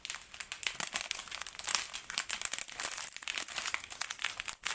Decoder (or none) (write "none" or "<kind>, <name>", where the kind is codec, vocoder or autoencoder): none